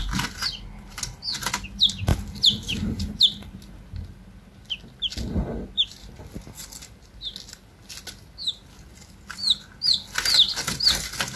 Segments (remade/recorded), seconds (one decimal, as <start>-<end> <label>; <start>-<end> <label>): 0.0-11.4 recorded